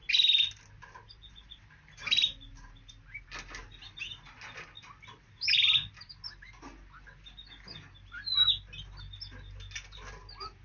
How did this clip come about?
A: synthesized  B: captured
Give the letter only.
B